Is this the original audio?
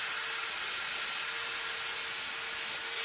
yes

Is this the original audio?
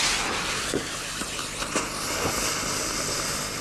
yes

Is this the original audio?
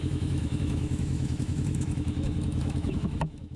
no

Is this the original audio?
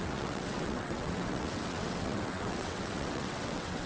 no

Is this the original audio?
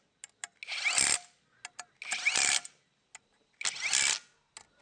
yes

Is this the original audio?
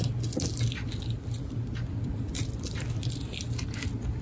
yes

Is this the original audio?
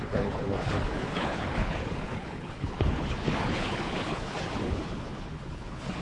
no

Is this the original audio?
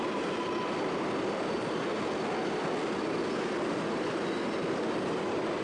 yes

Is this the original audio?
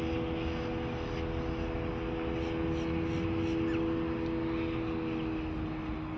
yes